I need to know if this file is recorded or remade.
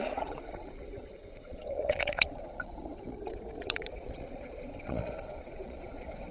remade